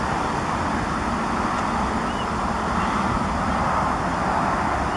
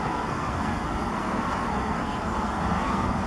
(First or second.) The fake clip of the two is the second